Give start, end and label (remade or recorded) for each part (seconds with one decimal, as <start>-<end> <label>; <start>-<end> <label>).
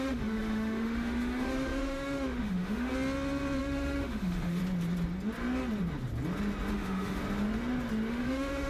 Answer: 0.0-2.9 remade; 2.9-3.6 recorded; 3.6-4.6 remade; 4.6-6.7 recorded; 6.7-7.2 remade; 7.2-8.1 recorded; 8.1-8.7 remade